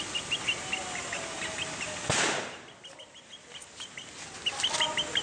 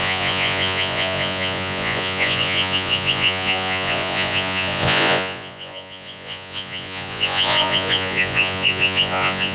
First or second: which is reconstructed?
second